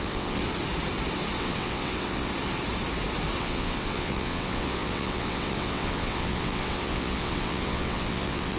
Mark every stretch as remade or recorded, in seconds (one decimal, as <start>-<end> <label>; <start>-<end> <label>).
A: 0.0-0.4 remade; 0.4-1.4 recorded; 1.4-2.3 remade; 2.3-3.4 recorded; 3.4-8.6 remade